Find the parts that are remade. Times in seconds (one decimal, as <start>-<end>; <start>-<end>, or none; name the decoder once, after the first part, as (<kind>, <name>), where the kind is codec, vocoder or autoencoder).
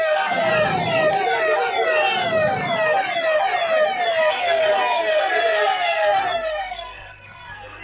0.0-0.5 (codec, SNAC); 4.3-7.8